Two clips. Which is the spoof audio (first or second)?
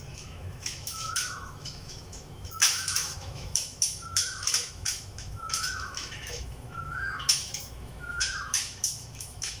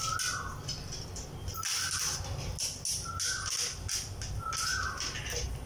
first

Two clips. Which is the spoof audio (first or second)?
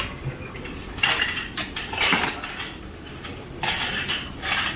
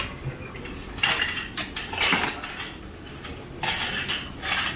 first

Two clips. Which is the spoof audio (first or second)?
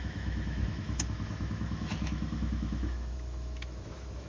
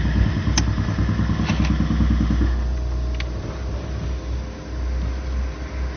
first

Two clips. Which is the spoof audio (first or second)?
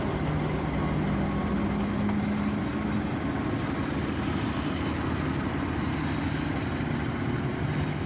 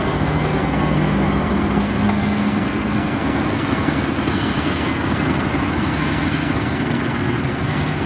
second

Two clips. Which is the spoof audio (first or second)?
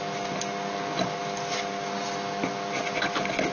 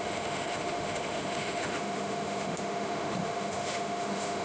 second